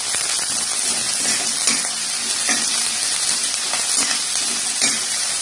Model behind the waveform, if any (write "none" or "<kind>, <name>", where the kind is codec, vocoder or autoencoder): none